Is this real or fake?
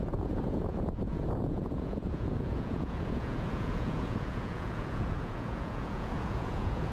fake